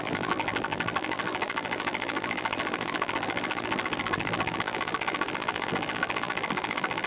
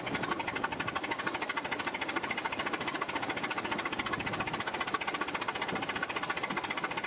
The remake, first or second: first